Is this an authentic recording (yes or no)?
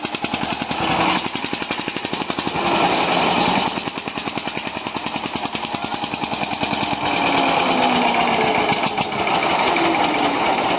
yes